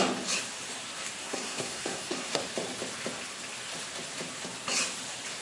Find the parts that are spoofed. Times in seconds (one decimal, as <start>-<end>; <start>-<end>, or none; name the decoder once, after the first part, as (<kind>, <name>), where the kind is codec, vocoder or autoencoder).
1.2-2.4 (codec, SNAC)